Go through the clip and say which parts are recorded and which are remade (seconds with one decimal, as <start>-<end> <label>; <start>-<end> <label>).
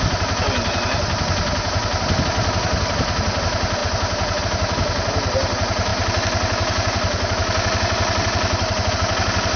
0.0-9.6 recorded